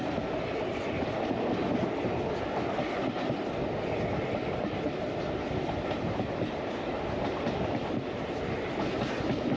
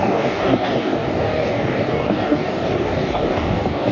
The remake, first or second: second